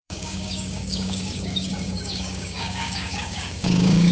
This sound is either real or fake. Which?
fake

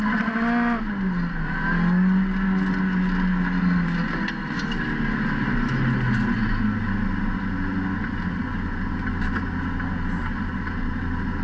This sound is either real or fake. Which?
real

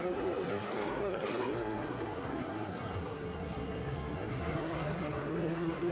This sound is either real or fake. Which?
fake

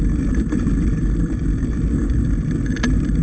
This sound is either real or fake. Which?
real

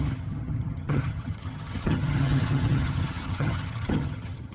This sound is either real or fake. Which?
fake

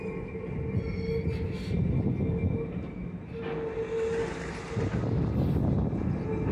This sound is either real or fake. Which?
real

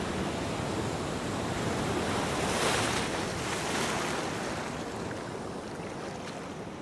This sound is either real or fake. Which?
real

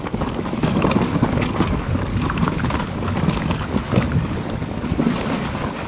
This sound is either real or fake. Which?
fake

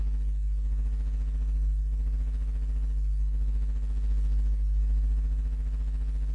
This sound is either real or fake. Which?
real